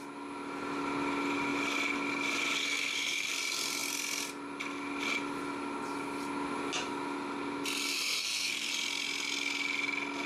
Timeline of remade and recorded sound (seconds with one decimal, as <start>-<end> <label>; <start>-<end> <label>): 0.0-2.6 recorded; 2.6-3.3 remade; 3.3-7.9 recorded; 7.9-8.7 remade; 8.7-10.3 recorded